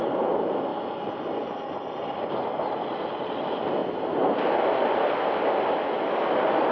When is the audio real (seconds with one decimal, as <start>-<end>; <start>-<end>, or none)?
0.0-6.7